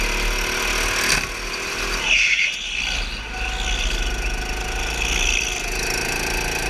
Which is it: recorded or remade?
recorded